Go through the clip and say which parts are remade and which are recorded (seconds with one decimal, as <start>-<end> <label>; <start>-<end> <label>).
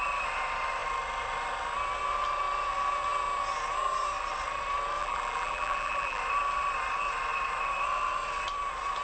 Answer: 0.0-5.0 recorded; 5.0-6.2 remade; 6.2-9.0 recorded